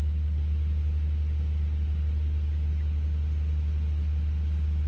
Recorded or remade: recorded